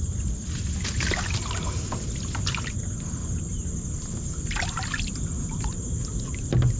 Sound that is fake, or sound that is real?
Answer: real